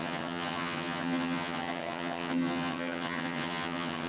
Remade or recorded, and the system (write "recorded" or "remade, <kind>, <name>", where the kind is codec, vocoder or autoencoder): remade, vocoder, HiFi-GAN